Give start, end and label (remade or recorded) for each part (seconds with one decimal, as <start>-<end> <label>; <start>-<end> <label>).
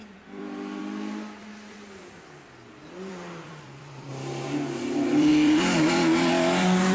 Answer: 0.0-0.8 remade; 0.8-3.1 recorded; 3.1-4.1 remade; 4.1-4.8 recorded; 4.8-6.9 remade